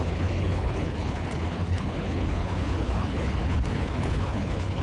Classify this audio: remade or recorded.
remade